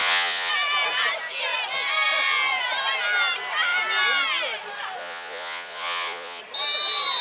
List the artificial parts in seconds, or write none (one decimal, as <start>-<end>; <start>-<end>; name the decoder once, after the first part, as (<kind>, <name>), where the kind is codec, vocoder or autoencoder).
0.0-0.5 (vocoder, Vocos); 5.0-6.4